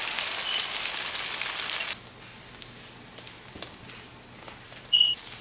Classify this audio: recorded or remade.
recorded